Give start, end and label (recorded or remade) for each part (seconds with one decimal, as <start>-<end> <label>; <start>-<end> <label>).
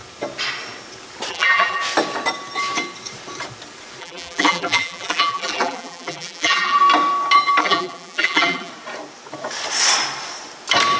0.0-1.3 recorded; 1.3-1.8 remade; 1.8-4.0 recorded; 4.0-6.8 remade; 6.8-7.6 recorded; 7.6-8.7 remade; 8.7-11.0 recorded